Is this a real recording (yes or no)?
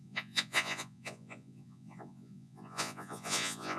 no